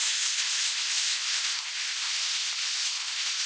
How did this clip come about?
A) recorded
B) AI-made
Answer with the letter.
B